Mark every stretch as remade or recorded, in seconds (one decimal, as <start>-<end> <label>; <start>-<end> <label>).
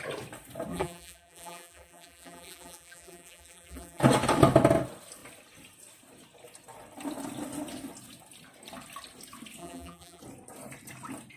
0.0-0.7 recorded; 0.7-4.0 remade; 4.0-9.6 recorded; 9.6-10.2 remade; 10.2-11.4 recorded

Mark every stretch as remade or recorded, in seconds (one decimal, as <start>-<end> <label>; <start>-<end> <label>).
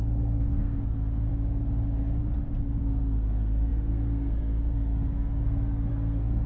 0.0-1.3 remade; 1.3-2.8 recorded; 2.8-6.5 remade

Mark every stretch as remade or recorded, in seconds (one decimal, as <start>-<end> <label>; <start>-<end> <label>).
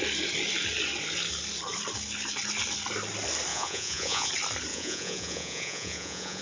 0.0-3.5 recorded; 3.5-4.3 remade; 4.3-4.7 recorded; 4.7-6.4 remade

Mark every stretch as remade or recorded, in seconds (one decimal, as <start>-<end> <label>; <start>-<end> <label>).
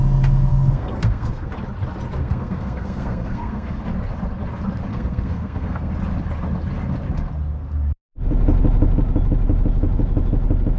0.0-0.5 recorded; 0.5-1.5 remade; 1.5-2.2 recorded; 2.2-3.8 remade; 3.8-4.9 recorded; 4.9-5.9 remade; 5.9-10.8 recorded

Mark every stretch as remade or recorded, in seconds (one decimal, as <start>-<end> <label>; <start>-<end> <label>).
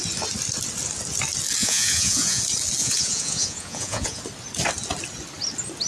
0.0-1.6 recorded; 1.6-2.4 remade; 2.4-2.8 recorded; 2.8-4.2 remade; 4.2-5.9 recorded